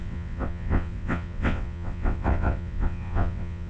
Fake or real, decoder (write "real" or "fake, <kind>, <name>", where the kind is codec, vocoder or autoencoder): fake, vocoder, WaveNeXt